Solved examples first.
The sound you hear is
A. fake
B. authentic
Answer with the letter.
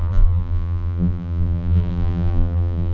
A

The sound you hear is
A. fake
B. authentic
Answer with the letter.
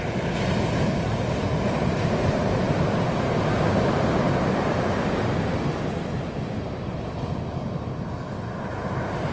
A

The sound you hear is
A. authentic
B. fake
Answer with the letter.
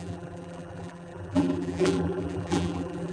B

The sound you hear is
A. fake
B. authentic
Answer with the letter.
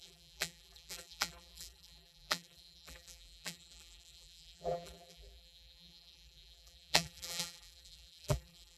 A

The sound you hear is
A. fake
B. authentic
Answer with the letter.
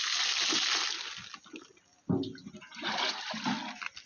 B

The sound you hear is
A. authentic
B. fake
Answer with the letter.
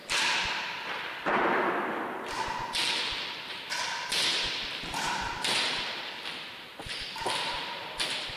B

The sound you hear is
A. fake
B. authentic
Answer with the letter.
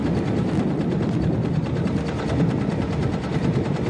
A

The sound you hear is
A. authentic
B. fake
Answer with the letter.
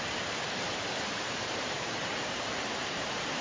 B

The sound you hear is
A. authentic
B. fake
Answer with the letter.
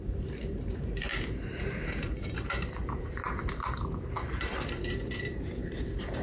B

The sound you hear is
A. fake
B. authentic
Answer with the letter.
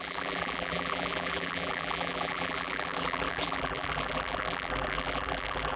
A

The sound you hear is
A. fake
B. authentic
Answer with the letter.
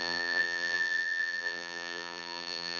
A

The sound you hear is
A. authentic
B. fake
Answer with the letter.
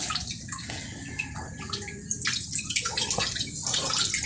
A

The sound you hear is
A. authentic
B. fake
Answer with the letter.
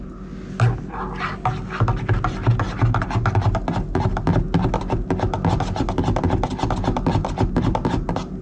A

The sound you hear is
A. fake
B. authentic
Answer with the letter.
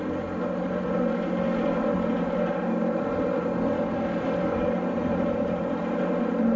B